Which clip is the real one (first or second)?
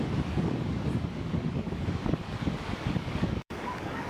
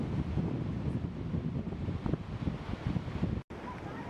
second